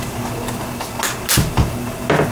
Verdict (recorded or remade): recorded